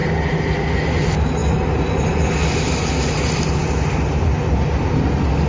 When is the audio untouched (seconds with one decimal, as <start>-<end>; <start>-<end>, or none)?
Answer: 0.0-5.5